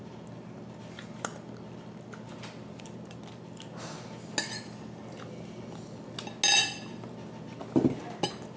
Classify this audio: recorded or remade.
recorded